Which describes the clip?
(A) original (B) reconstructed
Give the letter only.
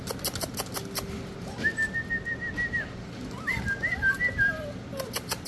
A